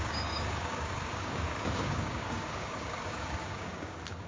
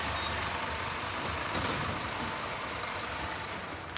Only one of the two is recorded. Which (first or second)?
second